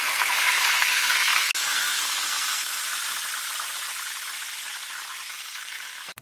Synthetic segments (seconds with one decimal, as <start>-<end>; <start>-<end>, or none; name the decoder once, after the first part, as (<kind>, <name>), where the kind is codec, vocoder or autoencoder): 0.0-2.8 (codec, SNAC); 5.3-6.2